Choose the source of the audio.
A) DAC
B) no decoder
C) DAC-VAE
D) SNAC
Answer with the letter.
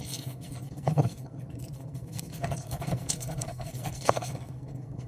D